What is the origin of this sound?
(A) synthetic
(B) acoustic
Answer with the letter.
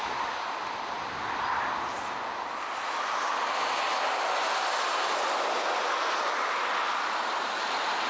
B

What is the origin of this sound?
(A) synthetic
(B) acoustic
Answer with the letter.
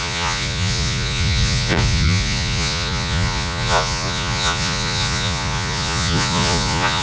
A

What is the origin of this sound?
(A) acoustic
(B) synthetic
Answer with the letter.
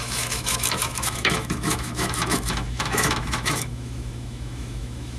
B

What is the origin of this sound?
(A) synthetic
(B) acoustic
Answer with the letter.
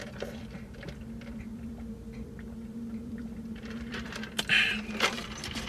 A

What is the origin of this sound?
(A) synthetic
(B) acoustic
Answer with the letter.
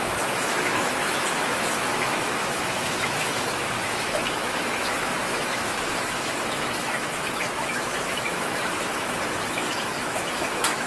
A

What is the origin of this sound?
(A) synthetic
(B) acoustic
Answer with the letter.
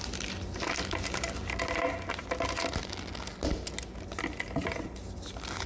B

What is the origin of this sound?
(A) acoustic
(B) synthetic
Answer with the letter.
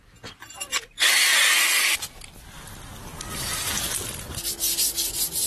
A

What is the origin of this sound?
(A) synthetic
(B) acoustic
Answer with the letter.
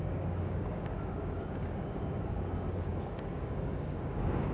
A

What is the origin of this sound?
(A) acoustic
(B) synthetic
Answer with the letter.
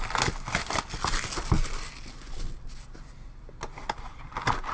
A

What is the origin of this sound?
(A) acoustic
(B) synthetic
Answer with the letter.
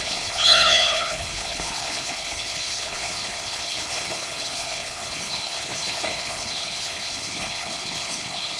B